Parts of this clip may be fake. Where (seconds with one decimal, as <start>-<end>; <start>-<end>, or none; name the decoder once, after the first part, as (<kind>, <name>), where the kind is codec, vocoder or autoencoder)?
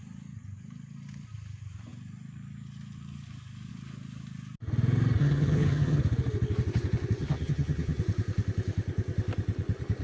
5.2-6.0 (vocoder, HiFi-GAN); 7.2-8.0